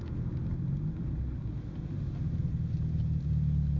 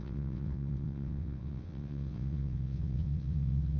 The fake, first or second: second